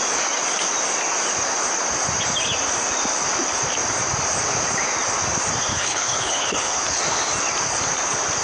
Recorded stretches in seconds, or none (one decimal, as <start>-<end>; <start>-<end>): 0.0-5.7; 7.0-8.4